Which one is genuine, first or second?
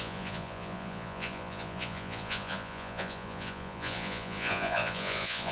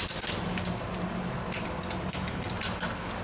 second